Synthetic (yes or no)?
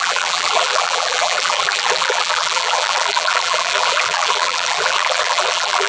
yes